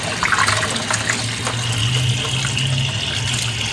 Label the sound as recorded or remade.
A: recorded